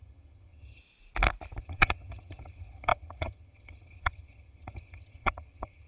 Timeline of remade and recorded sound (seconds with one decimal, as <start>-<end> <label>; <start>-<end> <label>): 0.0-0.8 remade; 0.8-1.6 recorded; 1.6-5.9 remade